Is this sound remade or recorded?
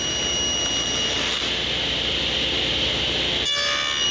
recorded